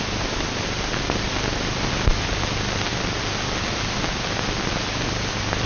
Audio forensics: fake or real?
real